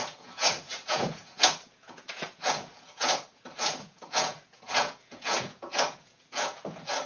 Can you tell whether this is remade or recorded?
remade